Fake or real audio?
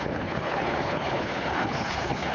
fake